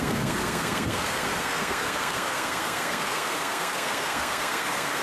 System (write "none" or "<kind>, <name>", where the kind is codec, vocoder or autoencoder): codec, SNAC